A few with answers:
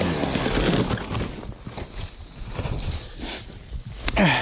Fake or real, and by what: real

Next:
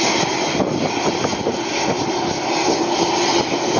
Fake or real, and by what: real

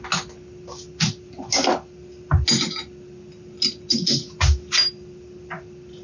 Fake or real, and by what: real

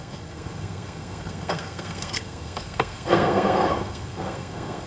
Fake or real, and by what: fake, codec, SNAC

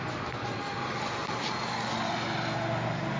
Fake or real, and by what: real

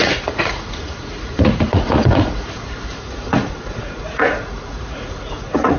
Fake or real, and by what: fake, vocoder, Vocos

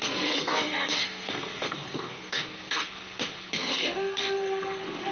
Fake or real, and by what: fake, codec, SNAC